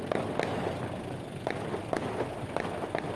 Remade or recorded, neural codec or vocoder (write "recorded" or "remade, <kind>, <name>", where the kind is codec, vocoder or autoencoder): recorded